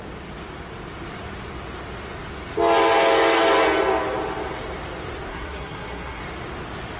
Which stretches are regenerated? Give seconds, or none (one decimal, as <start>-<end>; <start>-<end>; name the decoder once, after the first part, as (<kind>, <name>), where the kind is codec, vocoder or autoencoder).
5.3-6.2 (codec, SNAC)